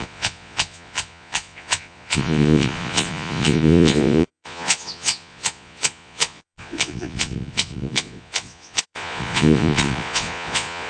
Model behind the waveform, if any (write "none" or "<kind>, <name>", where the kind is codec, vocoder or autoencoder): vocoder, Vocos